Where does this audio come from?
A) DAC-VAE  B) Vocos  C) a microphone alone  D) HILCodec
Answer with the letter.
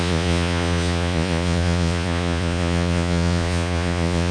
B